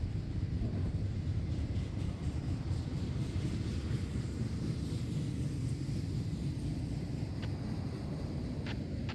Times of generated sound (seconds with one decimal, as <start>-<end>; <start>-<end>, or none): 0.0-3.7; 6.7-7.8